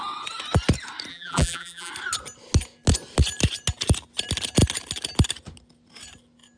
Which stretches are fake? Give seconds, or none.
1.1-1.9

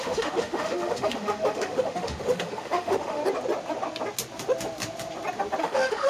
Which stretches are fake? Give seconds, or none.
0.0-3.2; 5.6-6.1

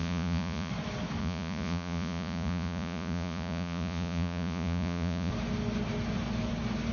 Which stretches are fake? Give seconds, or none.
0.0-0.7; 1.2-5.3

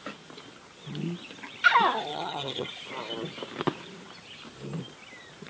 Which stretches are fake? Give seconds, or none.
2.1-2.7

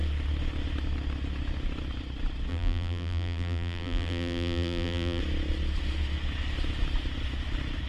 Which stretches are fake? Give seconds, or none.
2.5-5.2